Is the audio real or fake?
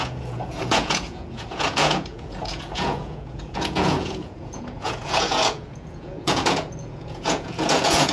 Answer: fake